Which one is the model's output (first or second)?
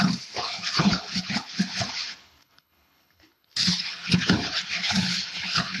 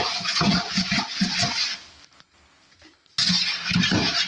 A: first